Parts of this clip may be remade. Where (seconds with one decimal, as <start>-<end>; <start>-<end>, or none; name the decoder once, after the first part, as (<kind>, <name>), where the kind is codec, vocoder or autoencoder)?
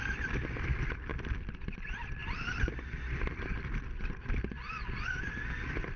none